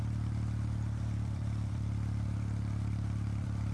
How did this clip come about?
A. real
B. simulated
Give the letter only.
B